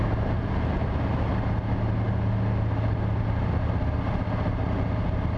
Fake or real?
real